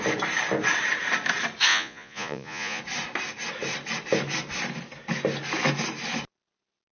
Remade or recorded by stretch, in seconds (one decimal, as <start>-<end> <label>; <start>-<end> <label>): 0.0-1.7 recorded; 1.7-2.8 remade; 2.8-6.9 recorded